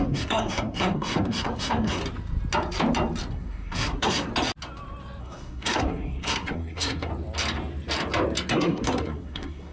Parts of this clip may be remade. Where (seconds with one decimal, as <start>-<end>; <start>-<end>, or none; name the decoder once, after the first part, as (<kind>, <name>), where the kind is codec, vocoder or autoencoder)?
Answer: 0.0-2.0 (codec, SNAC); 3.3-4.3; 5.2-7.1; 8.5-9.7